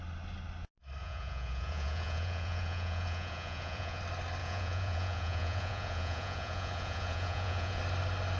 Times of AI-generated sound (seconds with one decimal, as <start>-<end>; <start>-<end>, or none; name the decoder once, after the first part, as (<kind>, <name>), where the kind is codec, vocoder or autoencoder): 1.0-4.0 (vocoder, Vocos); 4.4-7.8